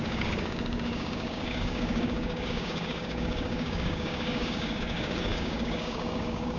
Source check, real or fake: fake